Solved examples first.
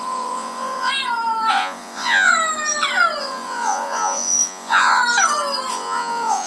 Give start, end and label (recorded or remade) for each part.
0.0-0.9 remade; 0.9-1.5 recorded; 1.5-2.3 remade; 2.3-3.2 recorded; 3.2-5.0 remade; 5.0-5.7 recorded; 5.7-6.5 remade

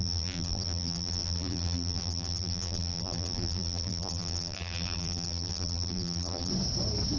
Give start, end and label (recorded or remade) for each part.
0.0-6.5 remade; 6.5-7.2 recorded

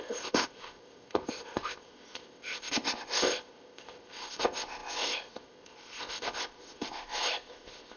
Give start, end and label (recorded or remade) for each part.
0.0-8.0 remade

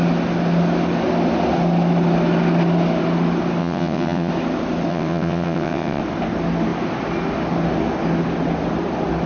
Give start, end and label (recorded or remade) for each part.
0.0-3.6 recorded; 3.6-4.3 remade; 4.3-4.9 recorded; 4.9-6.0 remade; 6.0-9.3 recorded

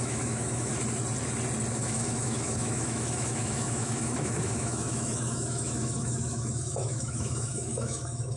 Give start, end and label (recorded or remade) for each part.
0.0-0.7 remade; 0.7-1.7 recorded; 1.7-8.4 remade